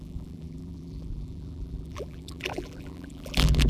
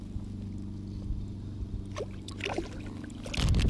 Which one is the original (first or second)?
second